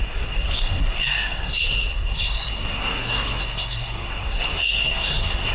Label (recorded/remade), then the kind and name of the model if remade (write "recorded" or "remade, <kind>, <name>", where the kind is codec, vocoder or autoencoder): remade, codec, SNAC